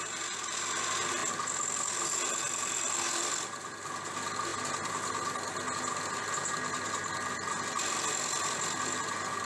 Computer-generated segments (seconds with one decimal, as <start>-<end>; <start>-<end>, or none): none